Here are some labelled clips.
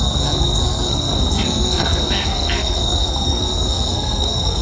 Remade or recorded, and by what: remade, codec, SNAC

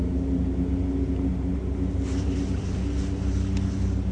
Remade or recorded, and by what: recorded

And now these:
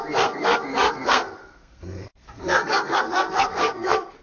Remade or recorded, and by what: remade, codec, SNAC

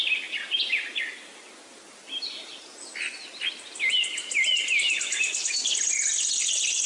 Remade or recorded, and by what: recorded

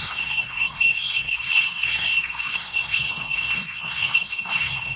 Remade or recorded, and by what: remade, codec, SNAC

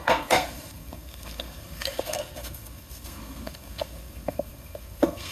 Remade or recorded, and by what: remade, codec, SNAC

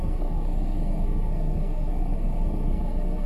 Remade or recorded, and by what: remade, codec, SNAC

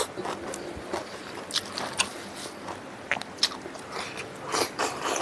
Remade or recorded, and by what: recorded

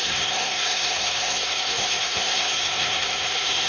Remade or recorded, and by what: remade, codec, SNAC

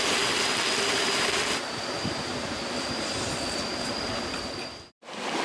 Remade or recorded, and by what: recorded